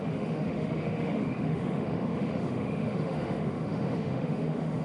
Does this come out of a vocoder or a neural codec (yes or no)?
yes